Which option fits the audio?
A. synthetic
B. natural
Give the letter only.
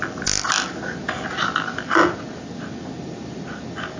B